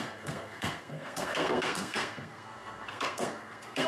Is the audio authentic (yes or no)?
no